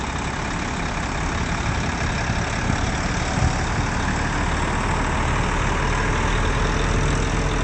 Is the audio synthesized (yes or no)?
no